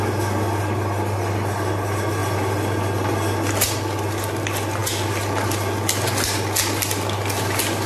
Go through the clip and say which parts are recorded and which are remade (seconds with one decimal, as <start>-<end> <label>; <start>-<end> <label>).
0.0-7.9 recorded